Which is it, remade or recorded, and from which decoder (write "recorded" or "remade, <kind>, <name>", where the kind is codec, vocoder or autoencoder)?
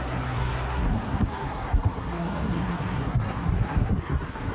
remade, codec, SNAC